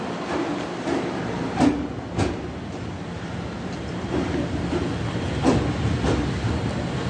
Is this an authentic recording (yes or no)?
yes